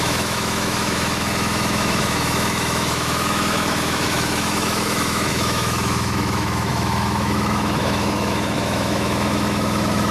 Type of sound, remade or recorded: remade